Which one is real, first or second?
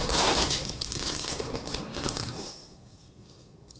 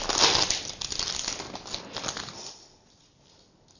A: second